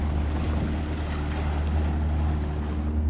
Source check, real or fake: real